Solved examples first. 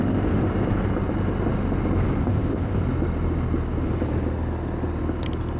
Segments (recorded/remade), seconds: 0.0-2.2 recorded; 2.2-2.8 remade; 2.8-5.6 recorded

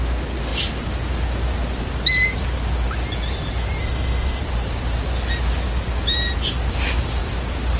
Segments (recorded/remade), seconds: 0.0-3.8 recorded; 3.8-4.4 remade; 4.4-7.8 recorded

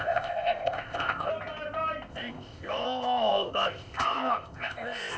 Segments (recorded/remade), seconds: 0.0-1.3 remade; 1.3-2.1 recorded; 2.1-5.2 remade